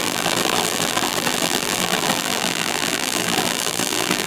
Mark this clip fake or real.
fake